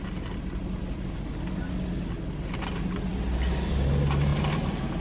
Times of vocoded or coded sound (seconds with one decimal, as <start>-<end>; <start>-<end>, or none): none